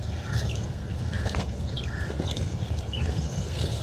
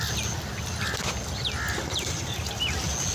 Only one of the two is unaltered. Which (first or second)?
second